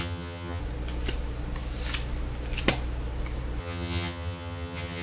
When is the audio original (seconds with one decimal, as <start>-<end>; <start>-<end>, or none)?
0.6-3.6